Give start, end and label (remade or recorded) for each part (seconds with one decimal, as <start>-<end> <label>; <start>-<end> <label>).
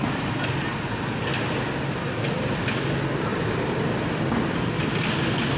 0.0-3.3 recorded; 3.3-4.7 remade; 4.7-5.6 recorded